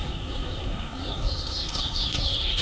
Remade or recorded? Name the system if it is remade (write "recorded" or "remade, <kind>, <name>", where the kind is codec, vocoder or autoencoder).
remade, codec, SNAC